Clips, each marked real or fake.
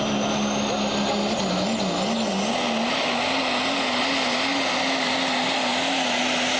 real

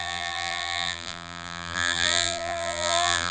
fake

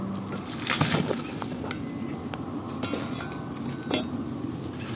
real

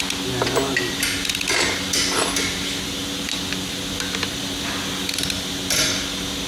real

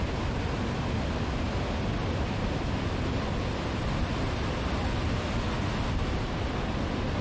real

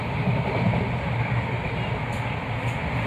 real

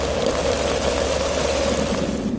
fake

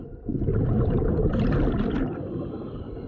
fake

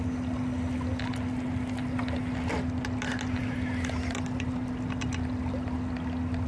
real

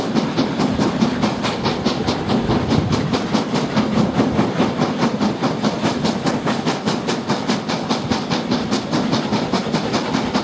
fake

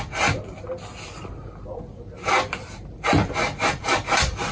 real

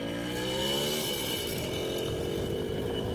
real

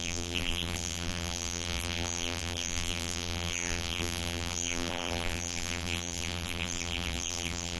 fake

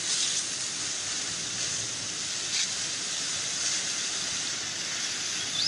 real